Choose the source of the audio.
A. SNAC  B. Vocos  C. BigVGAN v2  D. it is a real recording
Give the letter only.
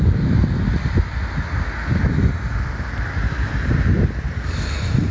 D